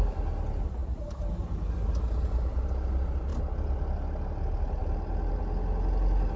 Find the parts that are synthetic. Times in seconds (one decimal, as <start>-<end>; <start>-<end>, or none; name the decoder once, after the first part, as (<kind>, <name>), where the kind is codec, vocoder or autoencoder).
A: none